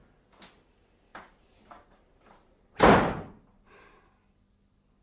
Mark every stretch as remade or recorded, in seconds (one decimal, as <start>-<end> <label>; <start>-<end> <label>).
0.0-1.1 recorded; 1.1-4.1 remade; 4.1-5.0 recorded